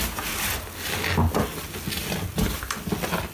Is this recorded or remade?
recorded